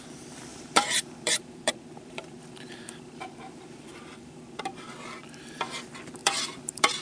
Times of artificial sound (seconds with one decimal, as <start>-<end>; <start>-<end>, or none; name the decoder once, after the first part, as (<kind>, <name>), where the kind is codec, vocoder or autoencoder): 0.5-4.6 (vocoder, BigVGAN v2); 6.2-7.0